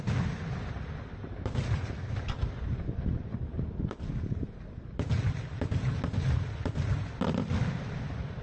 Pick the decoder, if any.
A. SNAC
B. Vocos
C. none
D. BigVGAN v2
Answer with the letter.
C